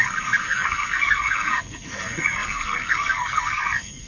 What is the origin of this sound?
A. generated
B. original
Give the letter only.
A